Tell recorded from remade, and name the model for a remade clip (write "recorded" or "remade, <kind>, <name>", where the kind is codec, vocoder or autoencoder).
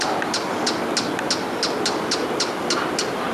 recorded